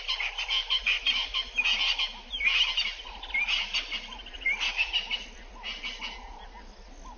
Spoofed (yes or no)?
no